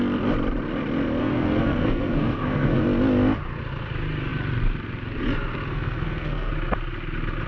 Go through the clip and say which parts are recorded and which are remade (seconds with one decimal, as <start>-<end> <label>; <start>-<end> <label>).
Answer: 0.0-1.2 recorded; 1.2-2.8 remade; 2.8-5.7 recorded; 5.7-6.5 remade; 6.5-7.5 recorded